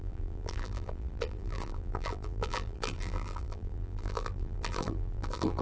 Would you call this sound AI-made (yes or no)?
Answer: yes